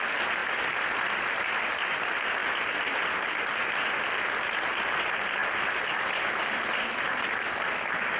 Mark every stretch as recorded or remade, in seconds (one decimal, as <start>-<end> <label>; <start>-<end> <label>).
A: 0.0-8.2 recorded